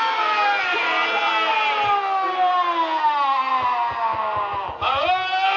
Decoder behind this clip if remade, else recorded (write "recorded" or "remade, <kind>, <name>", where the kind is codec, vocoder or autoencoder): recorded